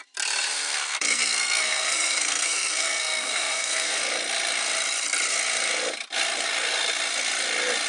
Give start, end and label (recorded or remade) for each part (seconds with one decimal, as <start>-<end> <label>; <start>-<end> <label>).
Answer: 0.0-0.5 recorded; 0.5-4.0 remade; 4.0-7.9 recorded